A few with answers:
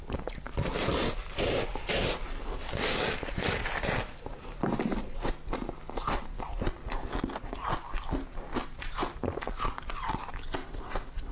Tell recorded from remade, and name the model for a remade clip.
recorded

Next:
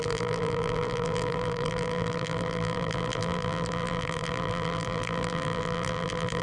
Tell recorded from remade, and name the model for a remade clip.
remade, vocoder, BigVGAN v2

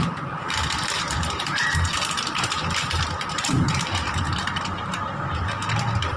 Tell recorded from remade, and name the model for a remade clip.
remade, vocoder, BigVGAN v2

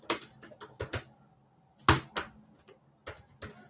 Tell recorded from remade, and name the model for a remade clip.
recorded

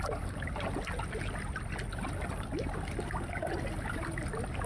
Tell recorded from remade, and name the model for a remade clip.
recorded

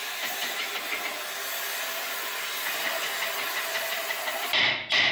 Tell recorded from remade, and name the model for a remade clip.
recorded